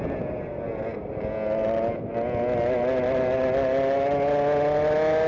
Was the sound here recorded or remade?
recorded